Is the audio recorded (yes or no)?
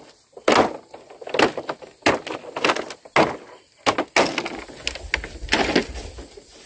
yes